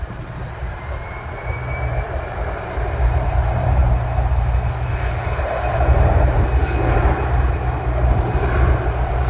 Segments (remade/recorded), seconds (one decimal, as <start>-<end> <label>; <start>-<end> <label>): 0.0-3.8 remade; 3.8-5.1 recorded; 5.1-9.3 remade